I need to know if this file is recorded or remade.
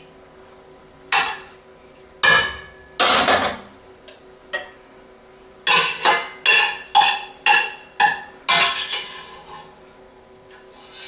recorded